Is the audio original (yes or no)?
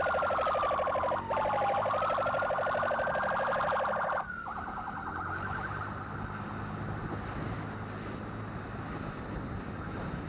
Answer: yes